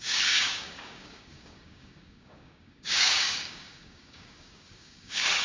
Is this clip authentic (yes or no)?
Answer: no